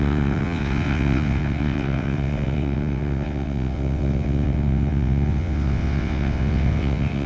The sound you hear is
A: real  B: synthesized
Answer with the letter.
B